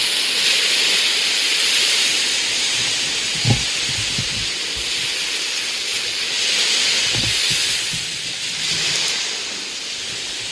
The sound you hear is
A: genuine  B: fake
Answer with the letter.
A